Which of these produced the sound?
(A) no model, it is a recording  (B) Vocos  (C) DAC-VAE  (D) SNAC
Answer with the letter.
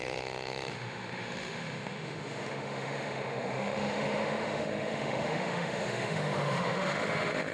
C